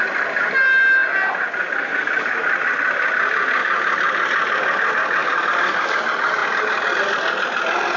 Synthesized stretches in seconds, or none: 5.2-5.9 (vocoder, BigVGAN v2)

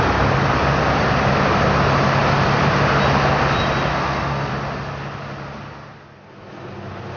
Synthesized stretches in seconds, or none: 3.9-4.5 (codec, SNAC)